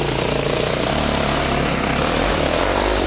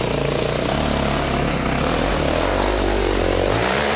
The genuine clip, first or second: second